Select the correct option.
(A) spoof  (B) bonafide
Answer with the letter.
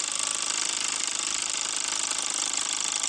B